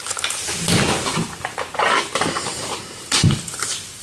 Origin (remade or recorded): remade